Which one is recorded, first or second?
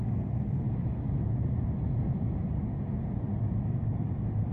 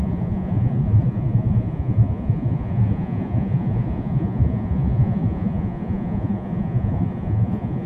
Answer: first